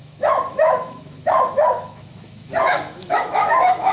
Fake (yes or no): yes